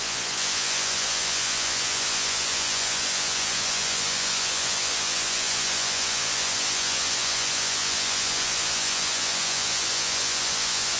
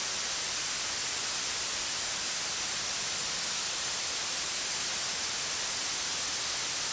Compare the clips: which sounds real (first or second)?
second